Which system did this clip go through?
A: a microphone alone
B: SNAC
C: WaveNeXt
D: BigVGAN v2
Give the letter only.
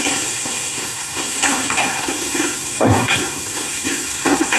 B